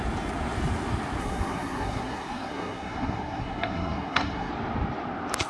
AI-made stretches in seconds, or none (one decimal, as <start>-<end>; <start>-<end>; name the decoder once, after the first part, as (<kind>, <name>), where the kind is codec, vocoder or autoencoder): 1.2-4.5 (codec, SNAC)